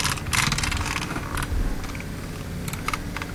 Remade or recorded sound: recorded